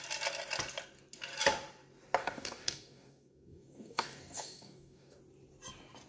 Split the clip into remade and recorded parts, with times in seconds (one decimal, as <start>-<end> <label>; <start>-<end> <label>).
0.0-2.2 recorded; 2.2-5.2 remade; 5.2-6.1 recorded